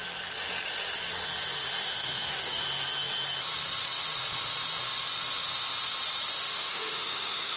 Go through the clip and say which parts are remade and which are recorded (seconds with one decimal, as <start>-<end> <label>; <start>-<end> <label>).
0.0-1.8 recorded; 1.8-2.6 remade; 2.6-6.4 recorded; 6.4-7.6 remade